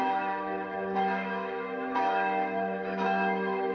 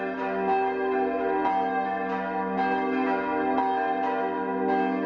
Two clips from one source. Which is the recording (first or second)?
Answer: second